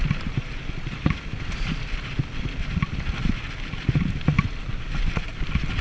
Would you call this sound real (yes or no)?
yes